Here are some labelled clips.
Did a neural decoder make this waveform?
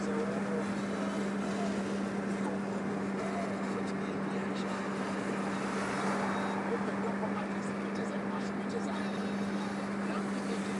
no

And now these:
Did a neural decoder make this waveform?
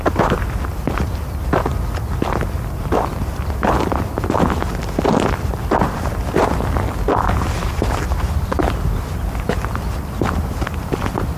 no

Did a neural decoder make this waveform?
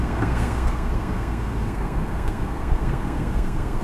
yes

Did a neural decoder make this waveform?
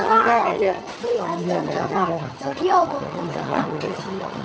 yes